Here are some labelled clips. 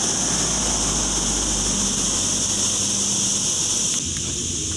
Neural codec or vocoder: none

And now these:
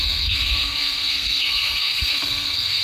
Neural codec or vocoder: codec, SNAC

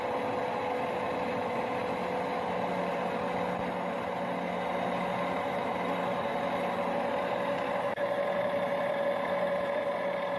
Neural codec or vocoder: none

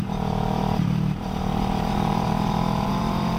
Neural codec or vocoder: vocoder, BigVGAN v2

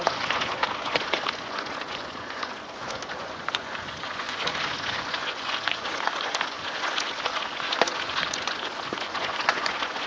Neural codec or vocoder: vocoder, Vocos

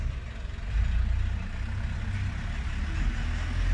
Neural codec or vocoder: none